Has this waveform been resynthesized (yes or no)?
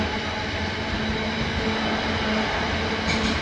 no